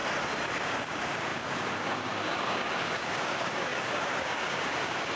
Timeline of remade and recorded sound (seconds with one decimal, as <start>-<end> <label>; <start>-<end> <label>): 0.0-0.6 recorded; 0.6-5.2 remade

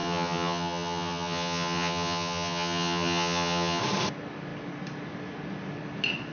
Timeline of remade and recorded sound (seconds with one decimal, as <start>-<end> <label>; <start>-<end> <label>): 0.0-3.8 remade; 3.8-6.3 recorded

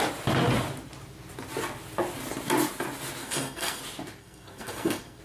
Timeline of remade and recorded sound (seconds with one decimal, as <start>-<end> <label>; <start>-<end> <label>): 0.0-3.2 recorded; 3.2-3.8 remade; 3.8-4.2 recorded; 4.2-5.2 remade

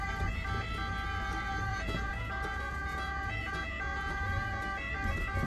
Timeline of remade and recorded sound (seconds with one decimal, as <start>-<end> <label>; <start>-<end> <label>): 0.0-1.7 recorded; 1.7-4.6 remade; 4.6-5.5 recorded

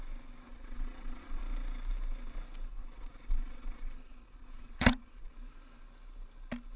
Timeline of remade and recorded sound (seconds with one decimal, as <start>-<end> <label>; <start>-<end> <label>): 0.0-0.5 recorded; 0.5-1.4 remade; 1.4-2.7 recorded; 2.7-5.3 remade; 5.3-6.8 recorded

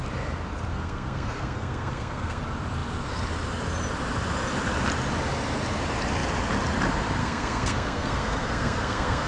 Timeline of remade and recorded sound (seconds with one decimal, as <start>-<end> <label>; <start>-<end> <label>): 0.0-0.7 recorded; 0.7-2.4 remade; 2.4-7.2 recorded; 7.2-9.3 remade

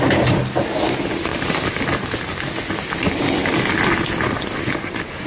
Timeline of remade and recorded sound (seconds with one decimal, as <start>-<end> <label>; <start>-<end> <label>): 0.0-1.3 remade; 1.3-2.7 recorded; 2.7-3.4 remade; 3.4-4.3 recorded; 4.3-5.3 remade